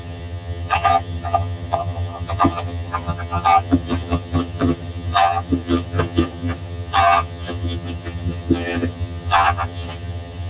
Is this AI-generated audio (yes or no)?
yes